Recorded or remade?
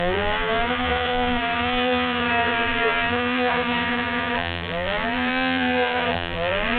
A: remade